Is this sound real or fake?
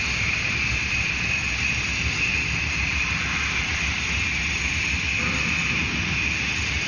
real